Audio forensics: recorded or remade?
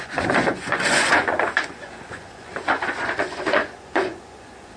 remade